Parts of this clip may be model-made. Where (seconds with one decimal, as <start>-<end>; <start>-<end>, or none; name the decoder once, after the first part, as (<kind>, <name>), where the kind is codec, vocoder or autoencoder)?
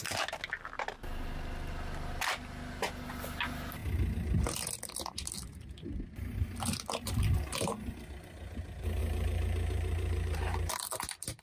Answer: 9.0-10.7 (vocoder, BigVGAN v2)